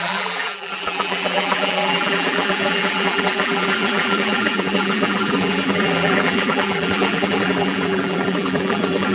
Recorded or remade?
remade